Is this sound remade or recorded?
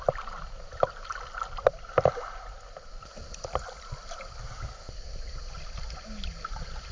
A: recorded